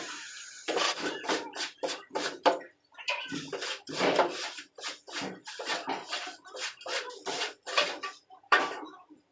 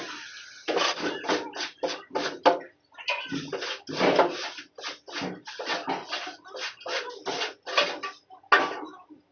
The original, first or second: second